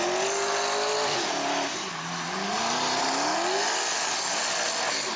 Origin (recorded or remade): recorded